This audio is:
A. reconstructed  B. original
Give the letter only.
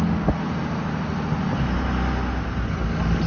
B